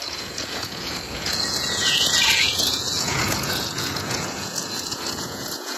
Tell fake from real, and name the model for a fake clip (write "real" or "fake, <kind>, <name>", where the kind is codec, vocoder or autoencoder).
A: fake, vocoder, Vocos